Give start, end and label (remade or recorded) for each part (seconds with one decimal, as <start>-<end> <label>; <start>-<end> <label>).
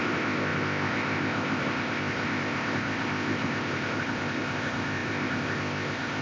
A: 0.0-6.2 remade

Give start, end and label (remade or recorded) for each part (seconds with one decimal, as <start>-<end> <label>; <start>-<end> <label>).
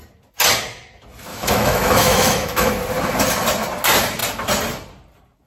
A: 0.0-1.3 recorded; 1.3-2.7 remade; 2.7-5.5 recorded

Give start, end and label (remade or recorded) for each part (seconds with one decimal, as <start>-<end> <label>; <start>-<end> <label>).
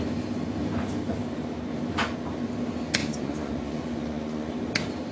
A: 0.0-3.0 recorded; 3.0-4.5 remade; 4.5-5.1 recorded